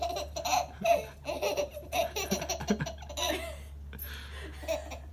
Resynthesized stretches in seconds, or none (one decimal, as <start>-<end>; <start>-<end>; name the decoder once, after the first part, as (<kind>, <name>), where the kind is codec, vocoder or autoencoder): none